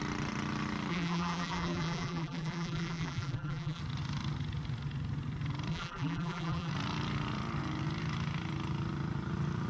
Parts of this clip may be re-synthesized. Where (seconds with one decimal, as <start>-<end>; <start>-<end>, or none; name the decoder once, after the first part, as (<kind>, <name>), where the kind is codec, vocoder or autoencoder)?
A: 0.9-3.8 (vocoder, BigVGAN v2); 5.7-6.7